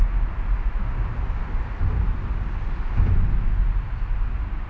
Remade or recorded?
recorded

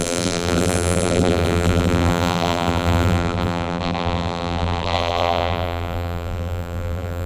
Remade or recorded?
remade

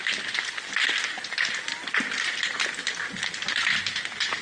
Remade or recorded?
recorded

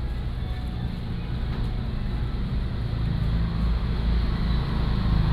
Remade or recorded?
recorded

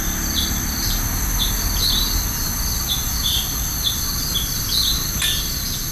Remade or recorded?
recorded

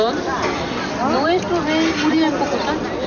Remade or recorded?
recorded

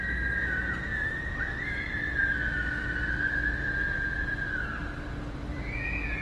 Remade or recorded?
recorded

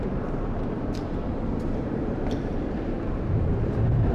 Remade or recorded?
remade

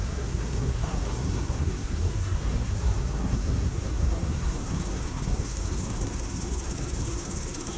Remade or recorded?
remade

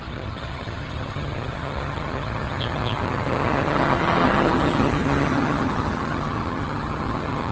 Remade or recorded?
remade